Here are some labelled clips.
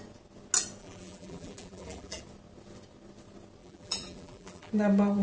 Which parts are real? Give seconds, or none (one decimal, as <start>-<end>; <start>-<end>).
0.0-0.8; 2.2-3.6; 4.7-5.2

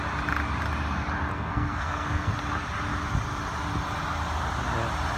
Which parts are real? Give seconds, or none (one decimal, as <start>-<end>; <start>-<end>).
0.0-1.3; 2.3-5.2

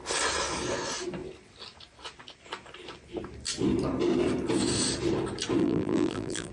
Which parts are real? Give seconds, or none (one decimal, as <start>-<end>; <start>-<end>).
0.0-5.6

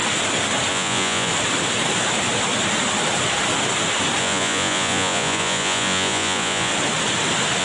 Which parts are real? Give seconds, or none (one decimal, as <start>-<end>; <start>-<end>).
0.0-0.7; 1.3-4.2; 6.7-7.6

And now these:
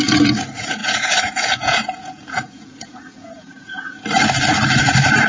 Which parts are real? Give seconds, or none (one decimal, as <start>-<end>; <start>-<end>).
0.0-0.8; 4.0-5.3

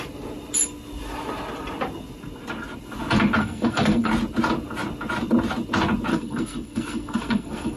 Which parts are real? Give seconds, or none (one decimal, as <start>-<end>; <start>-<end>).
0.0-3.4; 4.1-6.1

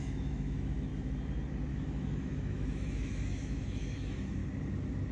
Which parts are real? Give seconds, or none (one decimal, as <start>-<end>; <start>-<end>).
0.9-1.7; 4.4-5.1